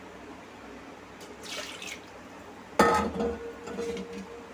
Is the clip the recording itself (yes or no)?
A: yes